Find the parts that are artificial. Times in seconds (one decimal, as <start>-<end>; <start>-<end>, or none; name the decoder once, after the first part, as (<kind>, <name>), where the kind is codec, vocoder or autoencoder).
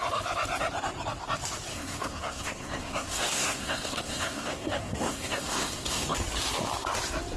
1.7-6.1 (codec, SNAC)